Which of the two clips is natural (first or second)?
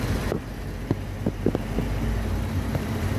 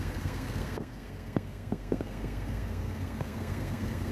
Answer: first